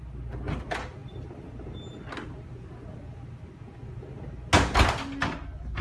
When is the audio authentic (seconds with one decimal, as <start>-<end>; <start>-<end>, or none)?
0.0-5.8